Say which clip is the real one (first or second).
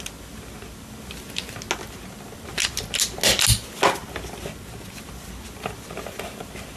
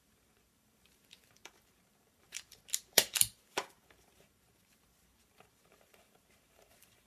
first